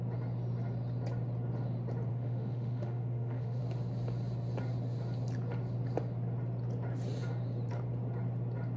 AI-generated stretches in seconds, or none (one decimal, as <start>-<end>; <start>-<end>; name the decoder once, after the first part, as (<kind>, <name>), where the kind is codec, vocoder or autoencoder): 2.1-3.6 (autoencoder, DAC-VAE)